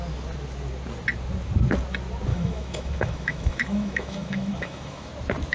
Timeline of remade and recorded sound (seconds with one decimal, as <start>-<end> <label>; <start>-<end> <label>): 0.0-2.3 recorded; 2.3-5.1 remade; 5.1-5.5 recorded